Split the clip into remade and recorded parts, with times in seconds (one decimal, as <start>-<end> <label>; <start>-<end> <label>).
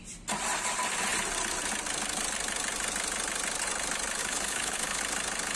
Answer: 0.0-4.2 recorded; 4.2-5.0 remade; 5.0-5.6 recorded